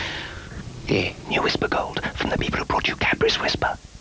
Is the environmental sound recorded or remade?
recorded